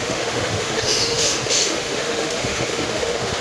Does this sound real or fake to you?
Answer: fake